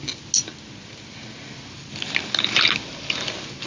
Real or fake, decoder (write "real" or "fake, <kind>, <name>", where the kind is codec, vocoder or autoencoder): real